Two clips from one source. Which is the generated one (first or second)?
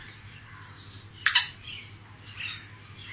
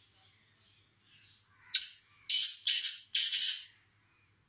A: first